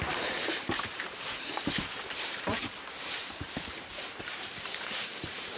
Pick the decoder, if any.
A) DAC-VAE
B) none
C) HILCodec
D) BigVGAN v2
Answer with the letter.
D